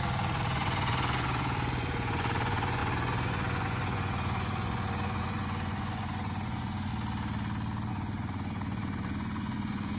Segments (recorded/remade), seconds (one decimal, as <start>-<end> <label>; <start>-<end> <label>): 0.0-6.9 remade; 6.9-7.9 recorded; 7.9-10.0 remade